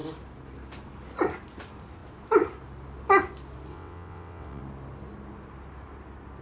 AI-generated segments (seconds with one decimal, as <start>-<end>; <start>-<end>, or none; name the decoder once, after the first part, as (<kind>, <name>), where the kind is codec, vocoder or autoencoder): 3.7-4.6 (vocoder, WaveNeXt)